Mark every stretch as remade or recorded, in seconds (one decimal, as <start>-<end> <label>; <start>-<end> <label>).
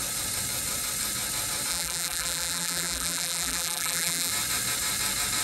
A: 0.0-1.7 recorded; 1.7-4.3 remade; 4.3-5.4 recorded